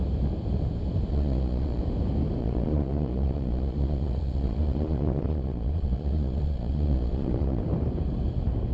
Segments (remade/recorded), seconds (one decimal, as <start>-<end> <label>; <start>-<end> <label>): 0.0-1.1 recorded; 1.1-1.8 remade; 1.8-2.4 recorded; 2.4-7.6 remade; 7.6-8.7 recorded